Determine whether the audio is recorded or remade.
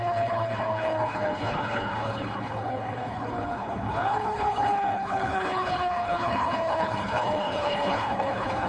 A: remade